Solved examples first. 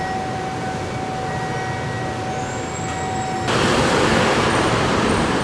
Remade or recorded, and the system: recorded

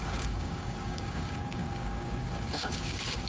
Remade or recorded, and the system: remade, codec, DAC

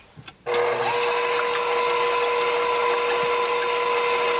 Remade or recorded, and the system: recorded